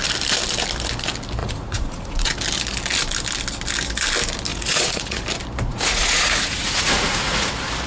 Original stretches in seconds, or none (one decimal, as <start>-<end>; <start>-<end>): 0.0-1.4; 2.3-4.5; 5.2-5.7; 7.5-7.9